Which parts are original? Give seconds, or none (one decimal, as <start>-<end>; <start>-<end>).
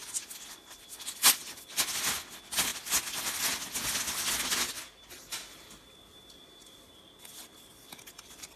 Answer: 0.0-8.6